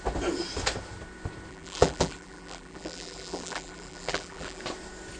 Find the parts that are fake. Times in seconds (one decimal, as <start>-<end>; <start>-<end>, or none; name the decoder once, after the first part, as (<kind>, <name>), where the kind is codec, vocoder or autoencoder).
1.5-4.6 (vocoder, BigVGAN v2)